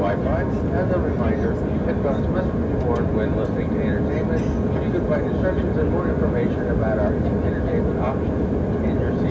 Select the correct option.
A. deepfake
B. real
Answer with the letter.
B